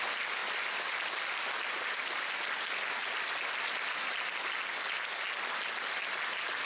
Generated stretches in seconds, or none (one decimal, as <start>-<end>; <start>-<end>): none